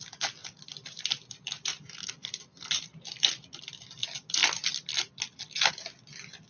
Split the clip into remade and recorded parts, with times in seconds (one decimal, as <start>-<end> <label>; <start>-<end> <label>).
0.0-0.4 recorded; 0.4-3.6 remade; 3.6-6.5 recorded